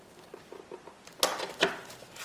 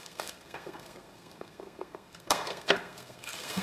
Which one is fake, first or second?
second